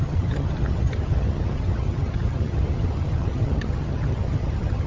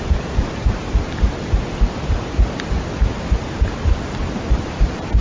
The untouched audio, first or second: second